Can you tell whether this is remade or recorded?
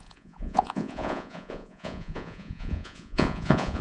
remade